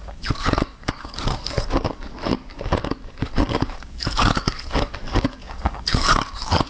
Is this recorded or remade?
remade